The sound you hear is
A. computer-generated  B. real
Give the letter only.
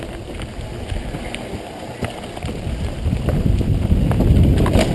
B